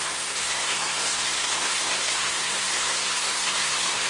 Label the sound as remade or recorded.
remade